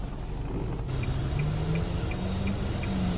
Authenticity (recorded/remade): recorded